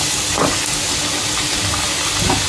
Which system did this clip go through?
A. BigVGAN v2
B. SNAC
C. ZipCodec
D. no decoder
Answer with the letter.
D